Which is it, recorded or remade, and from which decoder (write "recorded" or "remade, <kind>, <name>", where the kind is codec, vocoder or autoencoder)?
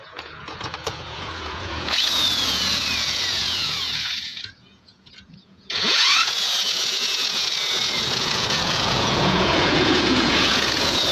remade, vocoder, Vocos